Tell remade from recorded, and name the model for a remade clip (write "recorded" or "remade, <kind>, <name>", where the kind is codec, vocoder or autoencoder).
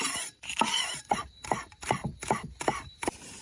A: remade, vocoder, BigVGAN v2